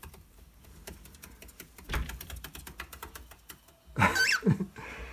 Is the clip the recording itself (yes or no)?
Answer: no